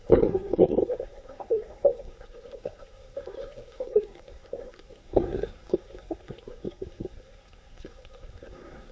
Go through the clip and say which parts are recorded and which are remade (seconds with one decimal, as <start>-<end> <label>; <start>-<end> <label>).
0.0-8.9 remade

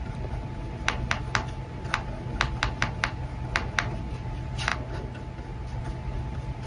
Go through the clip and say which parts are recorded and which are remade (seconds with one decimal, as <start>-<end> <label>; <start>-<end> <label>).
0.0-6.7 recorded

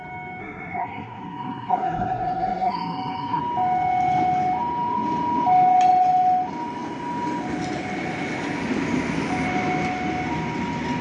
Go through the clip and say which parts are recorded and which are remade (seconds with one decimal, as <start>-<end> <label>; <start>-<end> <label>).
0.0-0.4 recorded; 0.4-3.4 remade; 3.4-11.0 recorded